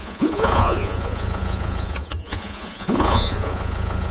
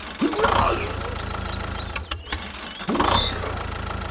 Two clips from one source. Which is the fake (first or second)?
first